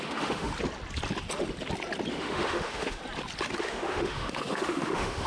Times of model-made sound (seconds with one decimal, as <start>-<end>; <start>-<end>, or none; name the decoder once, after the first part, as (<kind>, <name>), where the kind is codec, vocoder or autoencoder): 0.0-0.5 (autoencoder, DAC-VAE); 2.1-3.0; 3.6-5.3